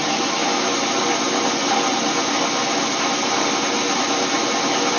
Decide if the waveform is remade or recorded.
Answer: recorded